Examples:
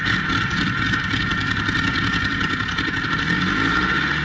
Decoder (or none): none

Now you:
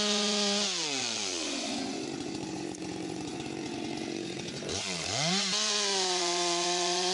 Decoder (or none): vocoder, Vocos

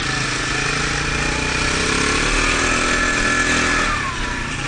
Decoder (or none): none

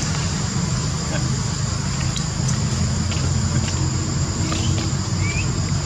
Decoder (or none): none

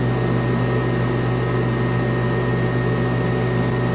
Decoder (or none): none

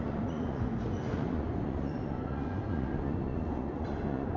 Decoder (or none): vocoder, Vocos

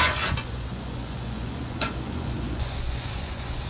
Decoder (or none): vocoder, Vocos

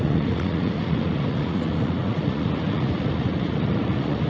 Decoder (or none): vocoder, Vocos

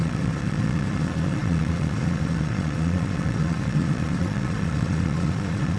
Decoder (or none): vocoder, Vocos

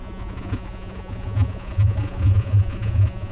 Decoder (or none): vocoder, Vocos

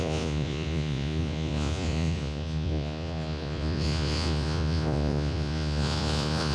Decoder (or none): vocoder, Vocos